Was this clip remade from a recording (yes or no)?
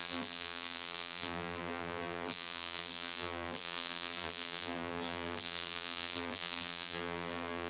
yes